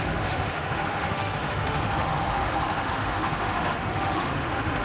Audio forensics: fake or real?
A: fake